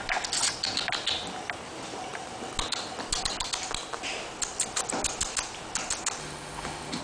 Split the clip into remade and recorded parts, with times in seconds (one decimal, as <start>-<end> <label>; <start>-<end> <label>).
0.0-6.2 recorded; 6.2-7.0 remade